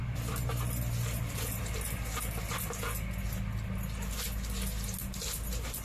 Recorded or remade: recorded